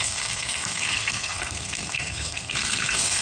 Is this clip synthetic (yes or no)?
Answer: yes